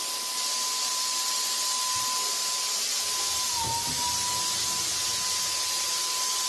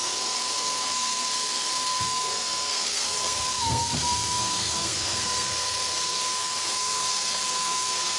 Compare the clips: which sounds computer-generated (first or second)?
second